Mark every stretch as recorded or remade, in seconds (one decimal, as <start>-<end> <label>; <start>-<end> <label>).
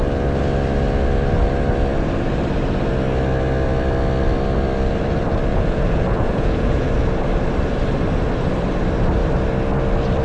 0.0-5.5 recorded; 5.5-6.9 remade; 6.9-10.2 recorded